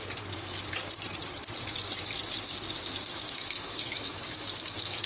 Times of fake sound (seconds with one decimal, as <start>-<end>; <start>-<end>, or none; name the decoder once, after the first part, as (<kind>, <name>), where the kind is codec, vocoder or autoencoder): 3.1-5.1 (autoencoder, DAC-VAE)